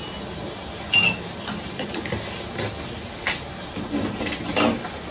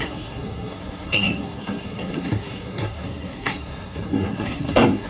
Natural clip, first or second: first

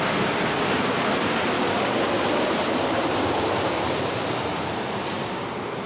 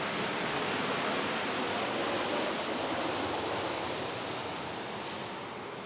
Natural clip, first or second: second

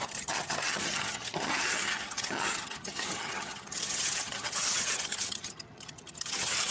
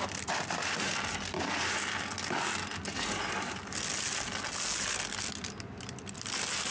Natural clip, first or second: second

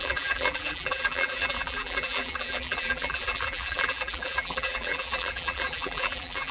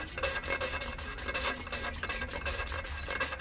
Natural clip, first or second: second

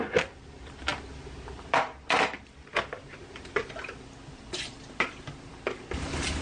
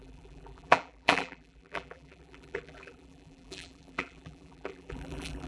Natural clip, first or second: first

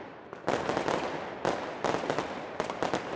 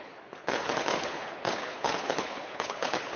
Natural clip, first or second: first